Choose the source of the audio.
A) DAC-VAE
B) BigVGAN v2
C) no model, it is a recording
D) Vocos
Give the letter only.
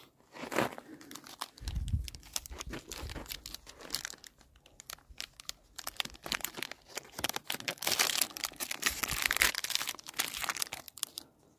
C